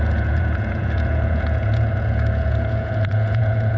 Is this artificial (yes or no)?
yes